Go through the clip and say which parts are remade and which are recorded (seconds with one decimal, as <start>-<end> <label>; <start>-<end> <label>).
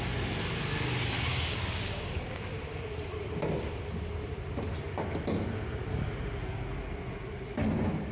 0.0-1.3 recorded; 1.3-2.4 remade; 2.4-8.1 recorded